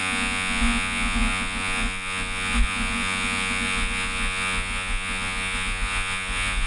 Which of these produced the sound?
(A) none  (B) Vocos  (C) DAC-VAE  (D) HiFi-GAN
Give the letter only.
B